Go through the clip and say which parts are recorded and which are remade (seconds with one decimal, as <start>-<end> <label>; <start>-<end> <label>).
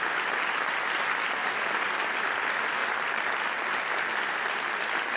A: 0.0-1.4 recorded; 1.4-2.4 remade; 2.4-2.8 recorded; 2.8-3.4 remade; 3.4-5.2 recorded